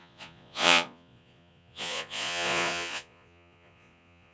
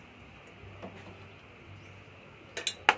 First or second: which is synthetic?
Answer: first